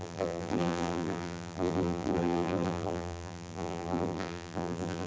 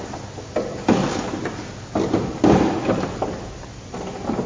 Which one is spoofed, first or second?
first